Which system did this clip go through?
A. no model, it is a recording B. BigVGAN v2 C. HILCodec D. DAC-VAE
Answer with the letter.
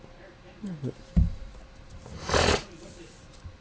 A